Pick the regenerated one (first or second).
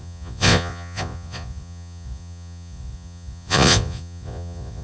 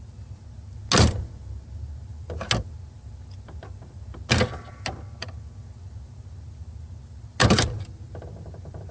first